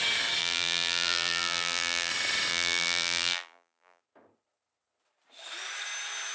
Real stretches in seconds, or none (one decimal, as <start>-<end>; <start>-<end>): 0.0-0.4; 2.1-2.5; 4.0-6.3